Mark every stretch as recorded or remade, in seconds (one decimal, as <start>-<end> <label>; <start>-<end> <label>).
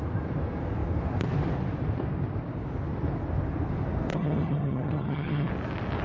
0.0-4.1 recorded; 4.1-5.5 remade; 5.5-6.0 recorded